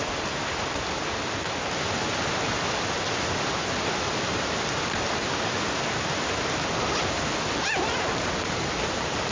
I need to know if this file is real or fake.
real